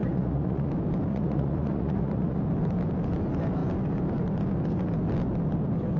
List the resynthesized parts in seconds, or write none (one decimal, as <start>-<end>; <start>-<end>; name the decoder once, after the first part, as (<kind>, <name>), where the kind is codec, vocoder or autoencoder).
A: 0.0-0.7 (vocoder, Vocos); 1.1-2.4